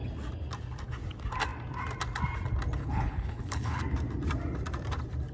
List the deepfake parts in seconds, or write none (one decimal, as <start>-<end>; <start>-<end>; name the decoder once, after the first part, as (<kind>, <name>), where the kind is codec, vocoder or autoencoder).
2.8-3.8 (codec, HILCodec)

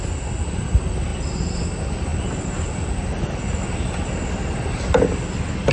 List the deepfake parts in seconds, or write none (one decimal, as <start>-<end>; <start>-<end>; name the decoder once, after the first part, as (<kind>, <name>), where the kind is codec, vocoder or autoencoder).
none

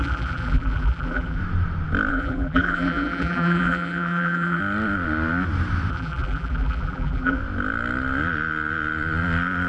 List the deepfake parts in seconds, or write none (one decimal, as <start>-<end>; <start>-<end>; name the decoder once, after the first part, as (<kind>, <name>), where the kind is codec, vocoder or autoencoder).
0.0-1.4 (vocoder, BigVGAN v2); 2.1-4.6; 5.9-7.4